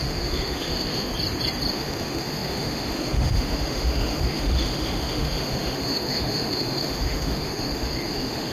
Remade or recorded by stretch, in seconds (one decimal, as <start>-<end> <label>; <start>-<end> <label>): 0.0-1.1 remade; 1.1-1.7 recorded; 1.7-8.5 remade